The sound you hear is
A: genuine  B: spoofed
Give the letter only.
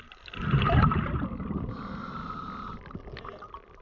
A